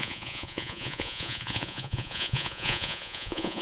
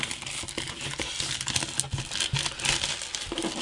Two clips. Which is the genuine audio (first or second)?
second